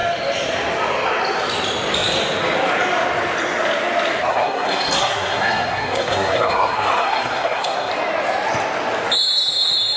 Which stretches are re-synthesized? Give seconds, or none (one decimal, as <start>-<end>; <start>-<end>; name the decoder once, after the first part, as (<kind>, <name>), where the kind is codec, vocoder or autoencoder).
4.3-7.9 (codec, SNAC)